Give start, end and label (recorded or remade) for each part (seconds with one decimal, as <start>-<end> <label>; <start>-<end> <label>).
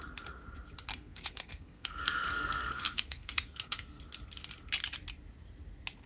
0.0-0.9 recorded; 0.9-4.0 remade; 4.0-6.1 recorded